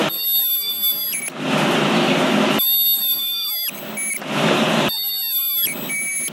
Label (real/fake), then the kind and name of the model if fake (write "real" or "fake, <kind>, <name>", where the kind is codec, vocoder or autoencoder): real